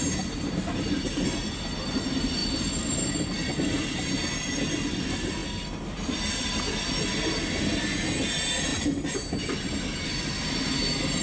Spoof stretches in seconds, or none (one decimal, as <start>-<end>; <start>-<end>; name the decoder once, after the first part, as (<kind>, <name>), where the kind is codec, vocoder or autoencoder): none